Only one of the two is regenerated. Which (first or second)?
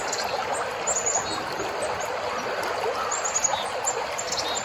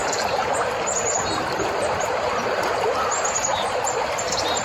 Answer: second